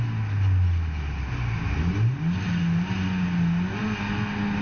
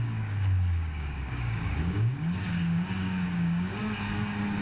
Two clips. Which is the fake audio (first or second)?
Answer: second